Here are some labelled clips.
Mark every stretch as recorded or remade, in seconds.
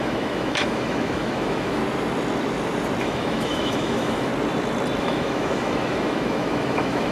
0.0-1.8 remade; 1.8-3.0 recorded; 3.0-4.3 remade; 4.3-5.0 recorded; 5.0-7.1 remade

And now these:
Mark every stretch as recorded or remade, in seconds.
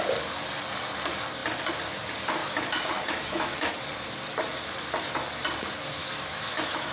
0.0-2.4 recorded; 2.4-3.7 remade; 3.7-6.0 recorded; 6.0-6.9 remade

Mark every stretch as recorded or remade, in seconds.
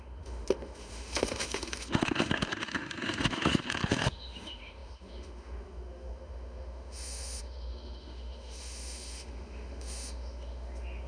0.0-11.1 remade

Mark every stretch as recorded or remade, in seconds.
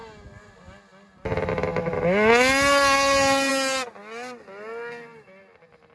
0.0-5.9 recorded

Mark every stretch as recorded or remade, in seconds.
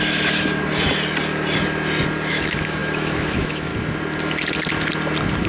0.0-0.6 remade; 0.6-2.3 recorded; 2.3-3.7 remade; 3.7-5.5 recorded